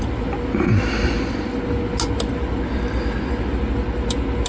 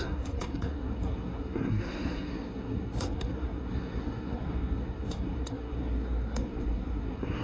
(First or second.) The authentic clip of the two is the first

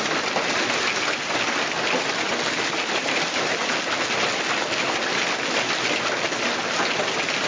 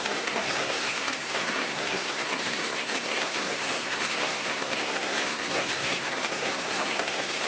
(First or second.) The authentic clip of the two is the first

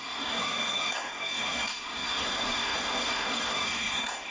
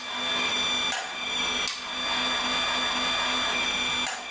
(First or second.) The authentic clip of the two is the second